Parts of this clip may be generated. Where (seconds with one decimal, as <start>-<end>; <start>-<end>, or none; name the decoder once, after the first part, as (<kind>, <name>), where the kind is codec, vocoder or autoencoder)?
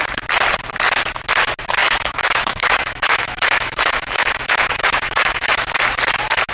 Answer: 1.8-5.7 (autoencoder, DAC-VAE)